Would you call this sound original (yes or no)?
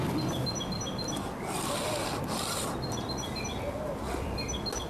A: yes